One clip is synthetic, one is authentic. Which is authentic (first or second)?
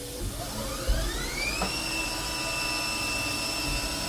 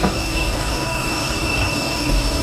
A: first